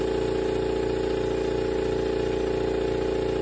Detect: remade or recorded recorded